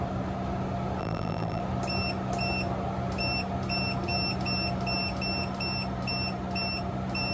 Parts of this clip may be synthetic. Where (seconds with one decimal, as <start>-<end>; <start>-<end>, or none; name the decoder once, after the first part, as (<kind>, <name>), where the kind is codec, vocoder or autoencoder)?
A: 1.0-1.6 (vocoder, BigVGAN v2)